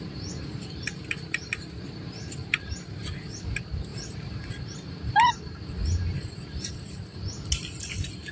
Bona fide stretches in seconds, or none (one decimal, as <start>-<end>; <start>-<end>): 7.1-7.9